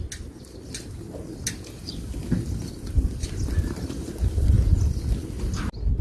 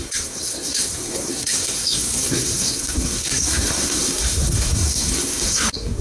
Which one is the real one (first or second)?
first